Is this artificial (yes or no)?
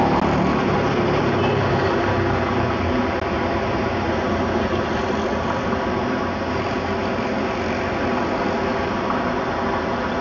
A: no